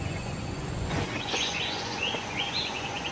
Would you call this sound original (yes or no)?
no